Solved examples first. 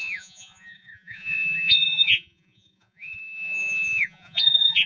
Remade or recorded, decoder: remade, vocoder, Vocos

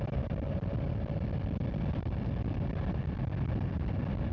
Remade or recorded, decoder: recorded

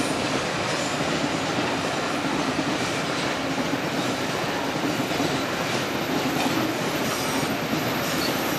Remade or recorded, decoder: recorded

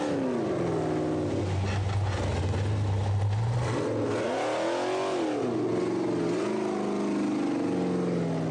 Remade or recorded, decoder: recorded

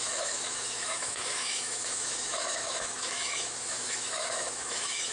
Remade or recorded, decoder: remade, autoencoder, DAC-VAE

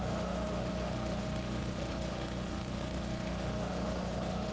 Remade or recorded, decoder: remade, autoencoder, DAC-VAE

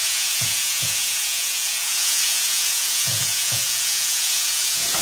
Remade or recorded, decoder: remade, vocoder, Vocos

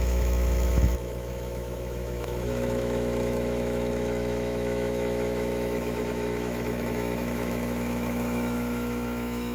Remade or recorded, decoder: remade, autoencoder, DAC-VAE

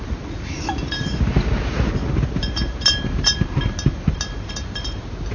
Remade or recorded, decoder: recorded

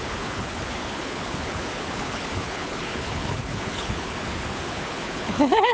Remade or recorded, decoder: remade, codec, HILCodec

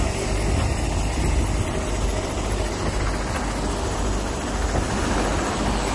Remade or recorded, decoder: recorded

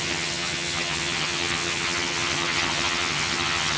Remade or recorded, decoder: remade, vocoder, HiFi-GAN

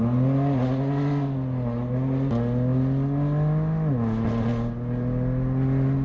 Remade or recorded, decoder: recorded